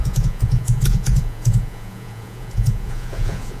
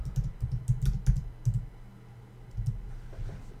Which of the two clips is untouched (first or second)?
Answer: second